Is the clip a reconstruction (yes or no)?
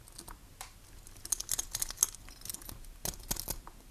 no